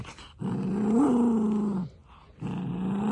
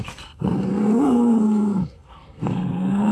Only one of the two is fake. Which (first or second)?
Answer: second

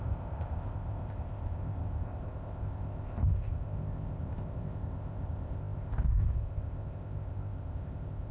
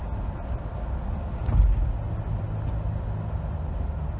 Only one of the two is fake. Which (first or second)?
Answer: first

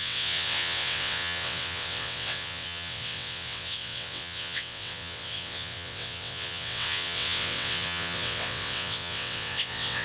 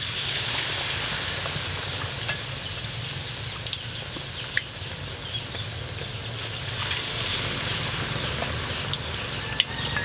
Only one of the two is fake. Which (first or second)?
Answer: first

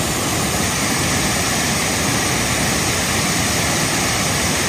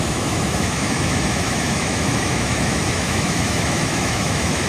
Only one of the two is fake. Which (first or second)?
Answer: second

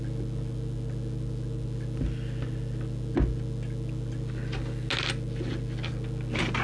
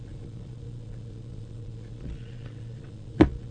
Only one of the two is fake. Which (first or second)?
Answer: second